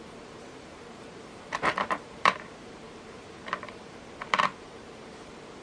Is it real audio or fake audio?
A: fake